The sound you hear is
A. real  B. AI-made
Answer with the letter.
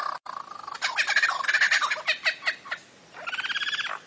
A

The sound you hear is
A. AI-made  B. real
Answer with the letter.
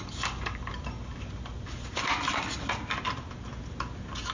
B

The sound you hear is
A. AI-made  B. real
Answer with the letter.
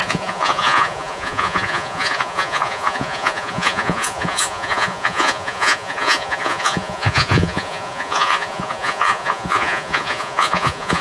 A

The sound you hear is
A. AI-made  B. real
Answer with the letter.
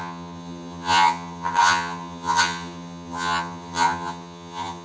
A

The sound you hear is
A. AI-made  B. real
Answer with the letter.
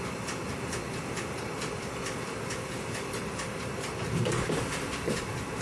B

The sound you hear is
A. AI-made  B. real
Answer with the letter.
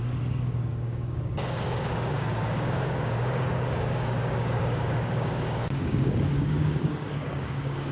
A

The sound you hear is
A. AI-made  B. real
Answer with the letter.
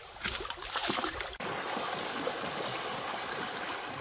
B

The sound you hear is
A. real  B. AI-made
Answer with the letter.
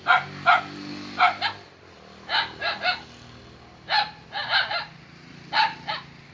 A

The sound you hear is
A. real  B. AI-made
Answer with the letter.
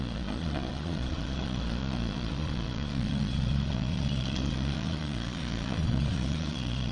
B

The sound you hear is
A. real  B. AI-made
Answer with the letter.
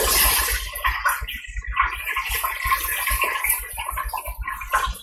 A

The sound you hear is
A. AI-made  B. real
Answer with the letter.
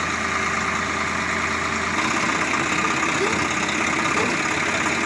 B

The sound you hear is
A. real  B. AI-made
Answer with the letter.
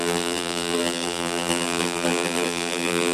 B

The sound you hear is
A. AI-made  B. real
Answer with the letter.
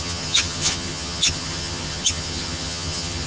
A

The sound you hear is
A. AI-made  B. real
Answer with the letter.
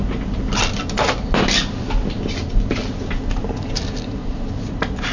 B